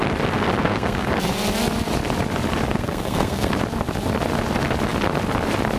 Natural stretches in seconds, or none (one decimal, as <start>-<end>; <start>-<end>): 0.0-0.6; 1.1-2.7; 3.5-5.8